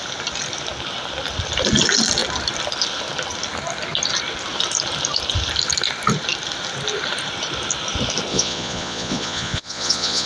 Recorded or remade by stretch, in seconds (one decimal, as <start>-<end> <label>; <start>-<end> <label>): 0.0-8.3 recorded; 8.3-10.3 remade